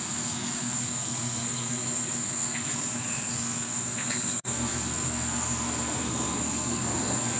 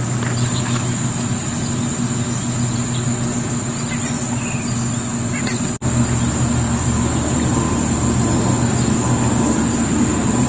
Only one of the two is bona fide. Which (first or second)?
second